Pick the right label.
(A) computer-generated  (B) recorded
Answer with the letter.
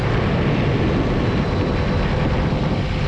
B